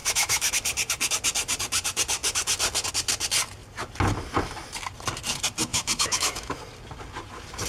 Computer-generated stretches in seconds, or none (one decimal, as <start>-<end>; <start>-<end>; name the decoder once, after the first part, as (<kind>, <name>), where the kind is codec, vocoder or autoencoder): 0.0-0.5 (autoencoder, DAC-VAE); 5.7-6.6